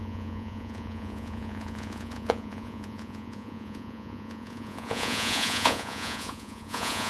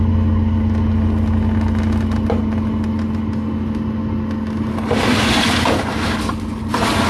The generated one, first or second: first